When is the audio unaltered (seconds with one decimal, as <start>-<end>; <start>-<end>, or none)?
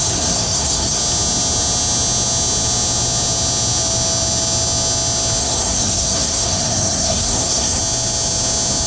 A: 1.0-5.4; 7.8-8.9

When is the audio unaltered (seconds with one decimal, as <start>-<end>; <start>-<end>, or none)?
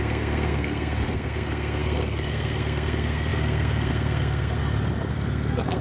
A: 4.6-5.1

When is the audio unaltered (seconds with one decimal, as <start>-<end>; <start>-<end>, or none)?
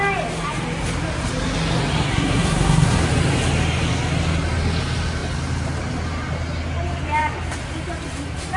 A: 0.0-2.1; 3.1-8.6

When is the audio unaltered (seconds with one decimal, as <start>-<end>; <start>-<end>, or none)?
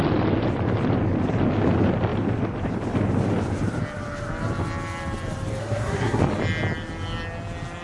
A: 0.0-5.6; 6.2-7.8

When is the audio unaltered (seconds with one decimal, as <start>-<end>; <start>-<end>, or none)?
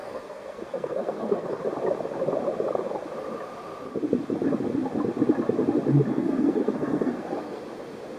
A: 1.6-6.1; 7.6-8.2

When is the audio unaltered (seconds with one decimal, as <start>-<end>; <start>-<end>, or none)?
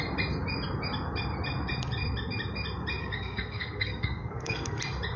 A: 0.0-3.0; 4.8-5.2